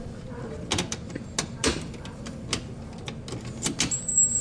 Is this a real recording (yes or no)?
yes